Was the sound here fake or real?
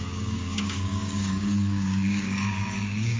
fake